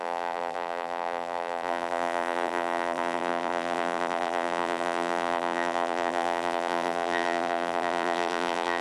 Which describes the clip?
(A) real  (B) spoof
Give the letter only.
B